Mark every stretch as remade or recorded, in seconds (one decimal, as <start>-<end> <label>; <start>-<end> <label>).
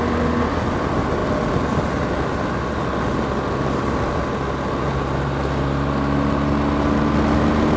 0.0-7.8 recorded